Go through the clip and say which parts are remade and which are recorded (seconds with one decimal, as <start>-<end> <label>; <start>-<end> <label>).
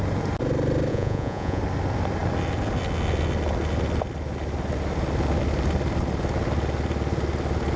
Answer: 0.0-0.9 recorded; 0.9-1.6 remade; 1.6-7.8 recorded